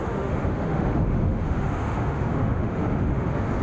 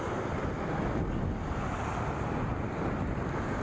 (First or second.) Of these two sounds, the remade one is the first